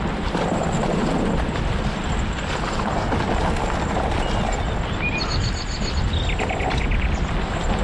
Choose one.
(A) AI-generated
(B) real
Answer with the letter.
B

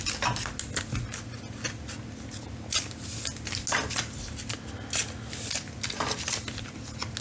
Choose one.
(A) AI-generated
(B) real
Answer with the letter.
B